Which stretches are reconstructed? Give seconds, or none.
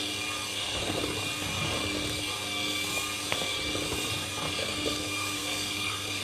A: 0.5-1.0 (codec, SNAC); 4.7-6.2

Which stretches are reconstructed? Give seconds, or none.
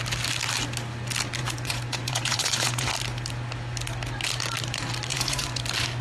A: 1.4-2.9 (vocoder, Vocos); 5.1-5.6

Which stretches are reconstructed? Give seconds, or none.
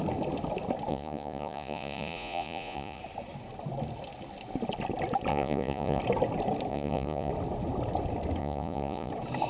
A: 0.9-3.0 (vocoder, Vocos); 5.3-6.0; 6.7-7.3; 8.4-9.1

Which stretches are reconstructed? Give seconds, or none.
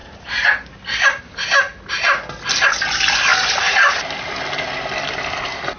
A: 3.3-5.8 (vocoder, BigVGAN v2)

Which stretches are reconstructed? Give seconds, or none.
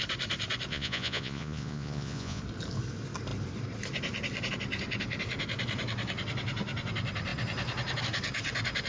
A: 0.7-2.4 (vocoder, Vocos)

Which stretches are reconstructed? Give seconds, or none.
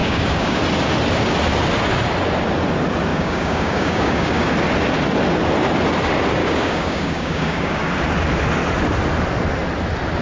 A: 0.0-0.6 (codec, DAC); 3.1-4.5; 6.4-7.9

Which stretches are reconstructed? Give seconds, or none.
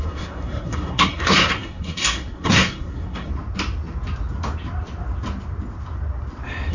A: 0.0-3.3 (codec, SNAC)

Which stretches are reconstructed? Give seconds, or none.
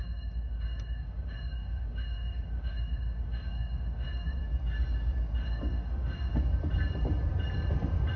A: 0.0-4.4 (autoencoder, DAC-VAE); 5.4-6.4